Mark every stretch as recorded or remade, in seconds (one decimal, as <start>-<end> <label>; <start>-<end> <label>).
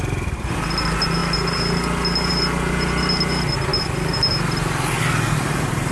0.0-5.9 recorded